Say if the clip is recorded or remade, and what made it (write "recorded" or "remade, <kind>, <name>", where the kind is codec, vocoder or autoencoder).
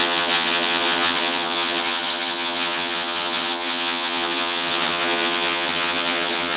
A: remade, vocoder, HiFi-GAN